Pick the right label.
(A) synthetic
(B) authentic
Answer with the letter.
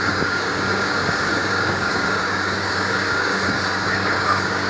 A